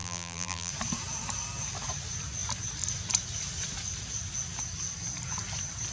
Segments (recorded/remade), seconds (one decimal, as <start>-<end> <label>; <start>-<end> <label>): 0.0-0.7 remade; 0.7-5.9 recorded